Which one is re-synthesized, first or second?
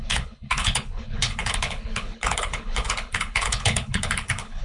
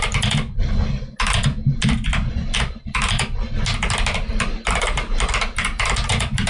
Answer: first